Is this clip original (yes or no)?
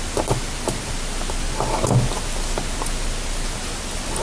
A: yes